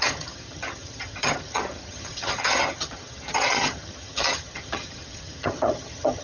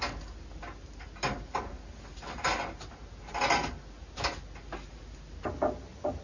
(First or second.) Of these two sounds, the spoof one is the first